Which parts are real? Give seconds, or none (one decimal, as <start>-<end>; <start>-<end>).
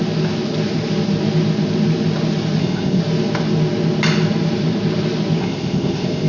0.0-2.6; 3.0-5.4